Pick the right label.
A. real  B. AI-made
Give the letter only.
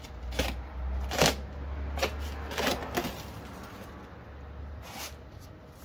A